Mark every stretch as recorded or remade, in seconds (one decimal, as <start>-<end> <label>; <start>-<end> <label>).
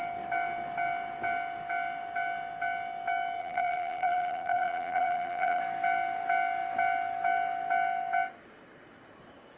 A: 0.0-3.4 recorded; 3.4-5.6 remade; 5.6-9.6 recorded